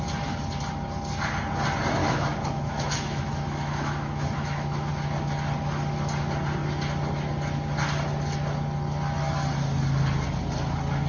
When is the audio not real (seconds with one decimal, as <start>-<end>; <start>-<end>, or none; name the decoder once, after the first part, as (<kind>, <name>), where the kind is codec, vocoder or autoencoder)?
2.0-4.9 (autoencoder, DAC-VAE)